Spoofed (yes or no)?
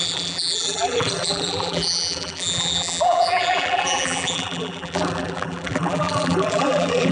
yes